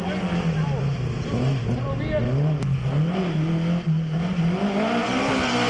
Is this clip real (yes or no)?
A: yes